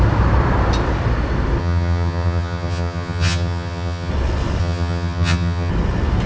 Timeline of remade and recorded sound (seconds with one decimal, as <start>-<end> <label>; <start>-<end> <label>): 0.0-1.6 recorded; 1.6-4.1 remade; 4.1-4.6 recorded; 4.6-5.7 remade; 5.7-6.3 recorded